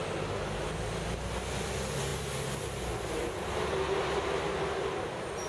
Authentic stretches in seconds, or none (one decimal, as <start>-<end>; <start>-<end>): 0.0-5.5